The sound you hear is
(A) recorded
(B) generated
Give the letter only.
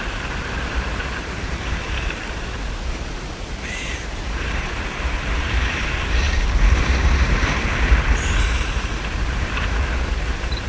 B